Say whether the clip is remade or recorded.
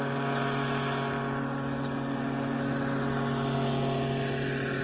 recorded